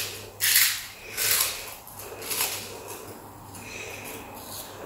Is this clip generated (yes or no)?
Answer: no